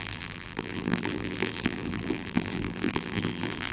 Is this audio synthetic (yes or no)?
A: yes